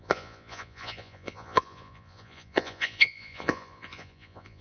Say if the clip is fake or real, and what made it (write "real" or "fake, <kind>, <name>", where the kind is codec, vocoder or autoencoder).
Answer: fake, vocoder, Vocos